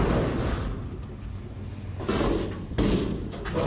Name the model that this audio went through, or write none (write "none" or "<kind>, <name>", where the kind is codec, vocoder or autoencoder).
none